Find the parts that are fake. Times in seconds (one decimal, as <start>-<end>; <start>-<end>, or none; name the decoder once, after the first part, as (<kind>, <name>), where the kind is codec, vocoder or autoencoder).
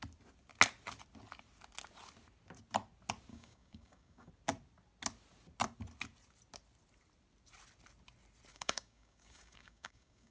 3.3-4.3 (codec, DAC); 8.5-10.3